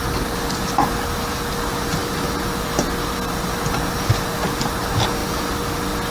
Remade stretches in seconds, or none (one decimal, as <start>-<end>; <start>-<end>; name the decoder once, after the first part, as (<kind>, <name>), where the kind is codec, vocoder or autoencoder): none